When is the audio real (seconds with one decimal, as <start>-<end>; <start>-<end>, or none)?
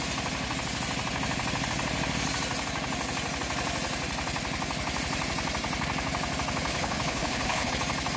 0.0-6.7; 7.7-8.2